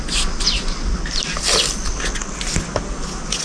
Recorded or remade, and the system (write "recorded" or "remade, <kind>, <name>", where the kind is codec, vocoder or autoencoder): recorded